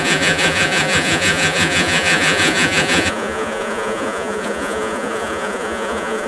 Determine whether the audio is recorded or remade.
remade